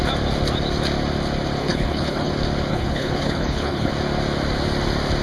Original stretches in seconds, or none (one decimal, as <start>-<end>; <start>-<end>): 0.0-1.6; 2.3-2.7; 3.9-5.2